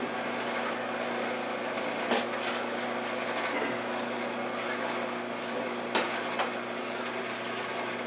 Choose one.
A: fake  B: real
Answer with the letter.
B